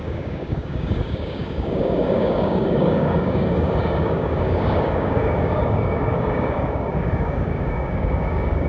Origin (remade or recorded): remade